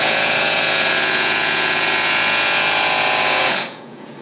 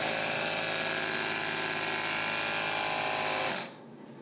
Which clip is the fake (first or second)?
first